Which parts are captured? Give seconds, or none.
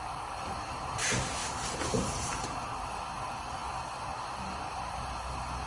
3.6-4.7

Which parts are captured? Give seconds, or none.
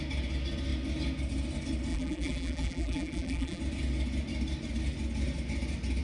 0.0-1.9; 3.6-6.0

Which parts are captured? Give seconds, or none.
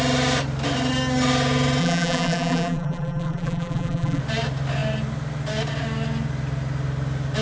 0.0-1.8; 4.2-7.4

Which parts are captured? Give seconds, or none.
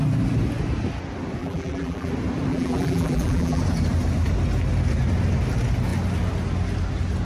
0.0-1.4; 2.1-2.5; 3.6-7.2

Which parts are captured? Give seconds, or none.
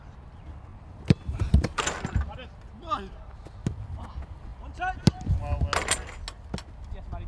0.0-0.7; 1.8-7.3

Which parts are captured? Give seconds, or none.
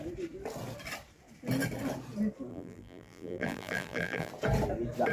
0.0-2.5; 4.3-5.1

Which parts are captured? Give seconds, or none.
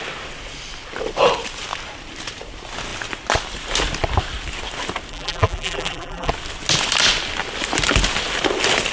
0.0-5.1; 6.3-8.9